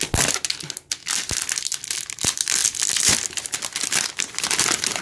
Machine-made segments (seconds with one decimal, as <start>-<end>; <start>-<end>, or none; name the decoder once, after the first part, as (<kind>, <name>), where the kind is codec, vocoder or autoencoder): none